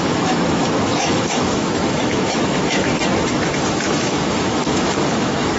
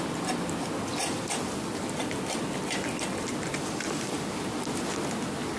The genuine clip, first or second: second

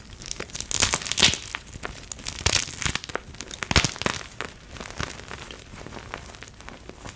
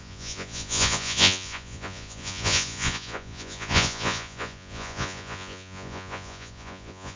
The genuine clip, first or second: first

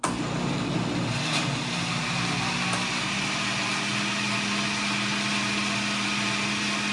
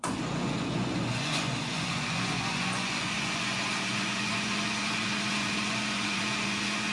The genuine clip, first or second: first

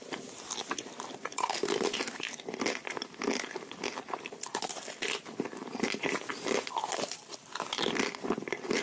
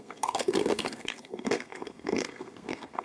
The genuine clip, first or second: first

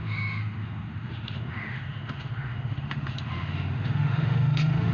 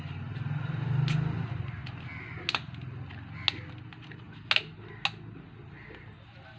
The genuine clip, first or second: second